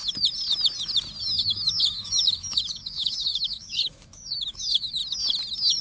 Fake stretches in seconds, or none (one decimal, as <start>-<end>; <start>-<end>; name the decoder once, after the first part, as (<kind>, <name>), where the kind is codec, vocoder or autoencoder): 1.2-5.0 (autoencoder, DAC-VAE)